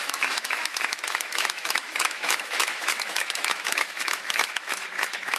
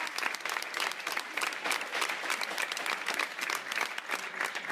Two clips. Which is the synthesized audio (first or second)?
first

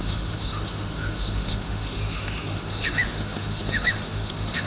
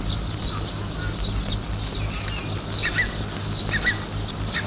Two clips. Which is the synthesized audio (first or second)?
first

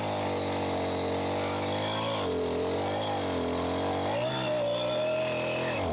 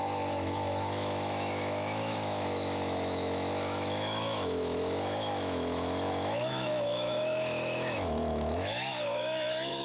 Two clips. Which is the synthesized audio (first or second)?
second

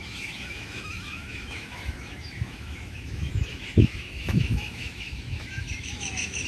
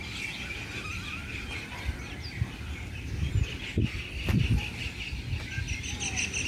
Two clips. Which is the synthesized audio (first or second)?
first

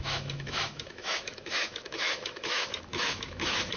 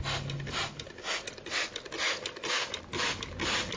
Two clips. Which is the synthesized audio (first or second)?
first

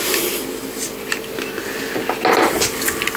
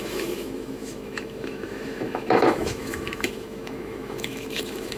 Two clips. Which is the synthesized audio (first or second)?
second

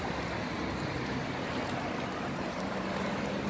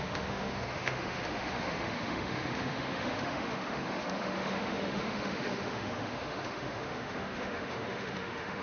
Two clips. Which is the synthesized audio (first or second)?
second